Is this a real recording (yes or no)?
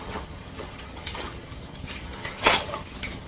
no